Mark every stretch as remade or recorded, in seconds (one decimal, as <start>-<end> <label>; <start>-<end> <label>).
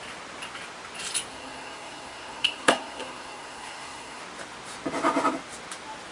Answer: 0.0-1.3 recorded; 1.3-4.2 remade; 4.2-6.1 recorded